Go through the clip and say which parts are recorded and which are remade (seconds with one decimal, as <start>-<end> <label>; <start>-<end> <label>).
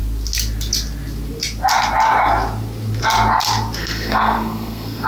0.0-3.8 recorded; 3.8-5.1 remade